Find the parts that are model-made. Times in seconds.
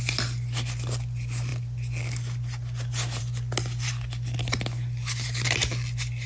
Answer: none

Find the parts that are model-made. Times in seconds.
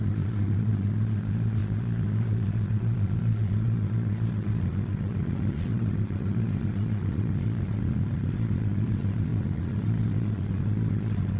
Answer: 0.0-11.4 (vocoder, Vocos)